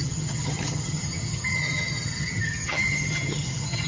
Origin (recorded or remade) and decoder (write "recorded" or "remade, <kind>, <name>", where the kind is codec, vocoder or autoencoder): remade, vocoder, HiFi-GAN